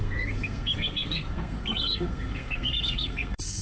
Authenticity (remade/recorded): remade